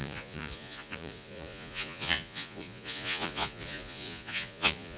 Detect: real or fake fake